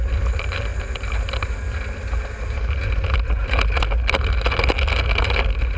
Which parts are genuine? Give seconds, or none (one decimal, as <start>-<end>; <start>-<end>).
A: 0.0-5.8

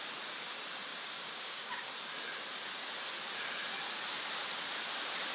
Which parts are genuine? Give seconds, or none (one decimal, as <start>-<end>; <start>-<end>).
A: 0.0-0.9; 1.8-5.3

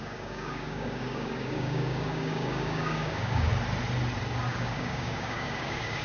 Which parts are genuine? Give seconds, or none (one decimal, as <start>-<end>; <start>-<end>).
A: 3.5-4.5

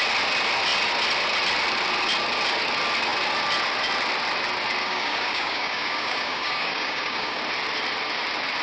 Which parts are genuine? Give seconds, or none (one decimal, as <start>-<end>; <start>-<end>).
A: 0.0-4.8; 7.4-8.6